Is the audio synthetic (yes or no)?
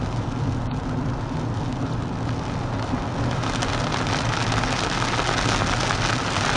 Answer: no